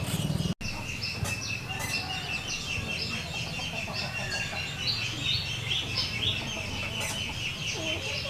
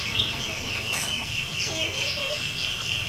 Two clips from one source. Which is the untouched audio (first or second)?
first